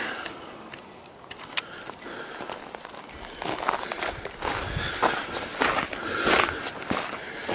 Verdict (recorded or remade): recorded